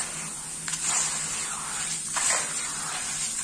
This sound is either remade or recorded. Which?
recorded